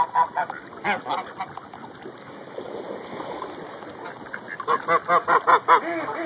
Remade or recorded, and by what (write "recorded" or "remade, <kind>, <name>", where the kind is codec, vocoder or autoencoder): recorded